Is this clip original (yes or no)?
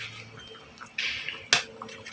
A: yes